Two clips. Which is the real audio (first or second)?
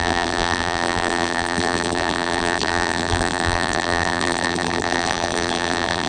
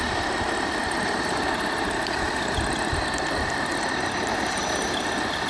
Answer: second